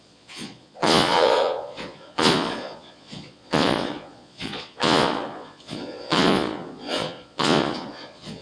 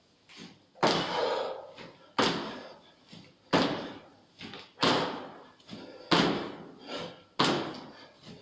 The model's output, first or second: first